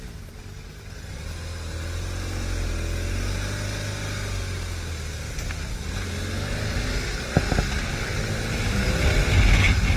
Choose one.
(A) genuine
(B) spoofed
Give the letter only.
A